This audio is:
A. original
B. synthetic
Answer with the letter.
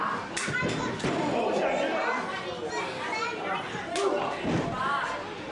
A